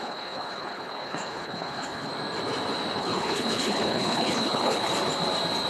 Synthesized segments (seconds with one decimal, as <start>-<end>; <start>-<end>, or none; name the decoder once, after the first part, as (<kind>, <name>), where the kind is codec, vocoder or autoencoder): 0.0-2.1 (codec, HILCodec); 3.0-4.9